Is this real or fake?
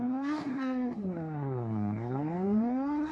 fake